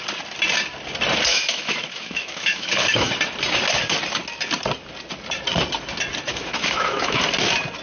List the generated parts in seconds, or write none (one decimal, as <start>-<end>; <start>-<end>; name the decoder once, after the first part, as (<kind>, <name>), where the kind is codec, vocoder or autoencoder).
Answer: 1.3-3.1 (autoencoder, DAC-VAE); 6.3-7.2